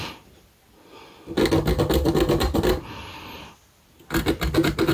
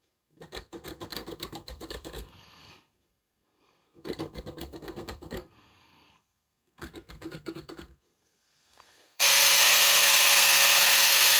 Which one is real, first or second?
first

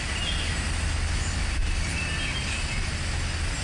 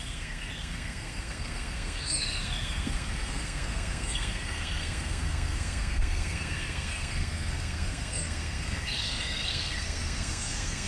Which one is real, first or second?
first